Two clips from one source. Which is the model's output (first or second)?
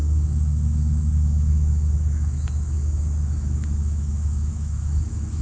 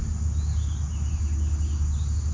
first